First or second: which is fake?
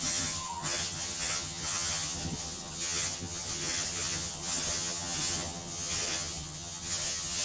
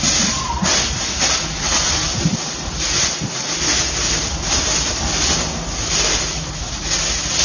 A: first